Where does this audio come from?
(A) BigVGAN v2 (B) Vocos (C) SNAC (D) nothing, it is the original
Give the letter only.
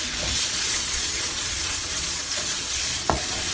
B